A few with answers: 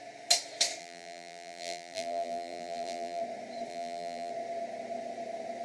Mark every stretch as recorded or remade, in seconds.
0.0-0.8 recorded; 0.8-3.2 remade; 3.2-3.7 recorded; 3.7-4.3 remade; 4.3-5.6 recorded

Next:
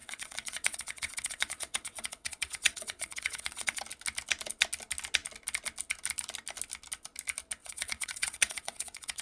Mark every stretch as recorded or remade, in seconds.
0.0-3.8 remade; 3.8-7.6 recorded; 7.6-9.2 remade

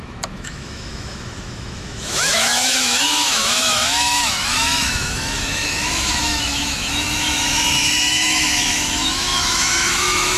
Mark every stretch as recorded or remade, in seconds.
0.0-10.4 remade

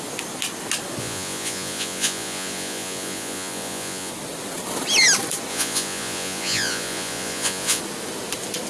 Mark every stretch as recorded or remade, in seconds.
0.0-1.0 recorded; 1.0-4.1 remade; 4.1-5.5 recorded; 5.5-7.8 remade; 7.8-8.7 recorded

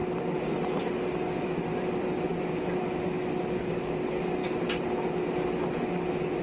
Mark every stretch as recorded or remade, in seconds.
0.0-6.4 recorded